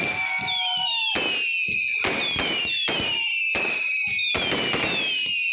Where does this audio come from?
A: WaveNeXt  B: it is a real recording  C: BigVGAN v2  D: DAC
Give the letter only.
B